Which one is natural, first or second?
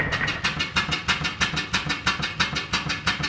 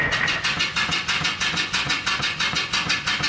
first